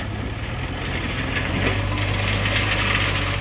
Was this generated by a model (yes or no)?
no